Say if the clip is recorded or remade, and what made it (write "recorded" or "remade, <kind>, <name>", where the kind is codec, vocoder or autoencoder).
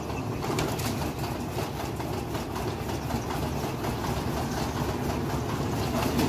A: recorded